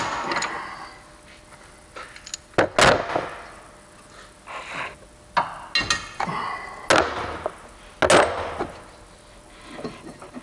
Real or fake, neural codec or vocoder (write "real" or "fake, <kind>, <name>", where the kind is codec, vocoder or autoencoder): real